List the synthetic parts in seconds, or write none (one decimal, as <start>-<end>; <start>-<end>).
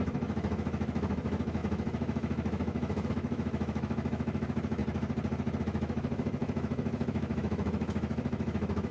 0.0-4.8; 5.6-8.9